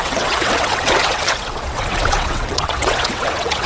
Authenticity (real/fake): fake